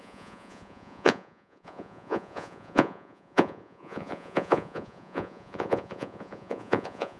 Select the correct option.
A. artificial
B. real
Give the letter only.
A